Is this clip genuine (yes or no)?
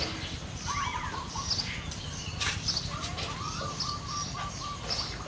yes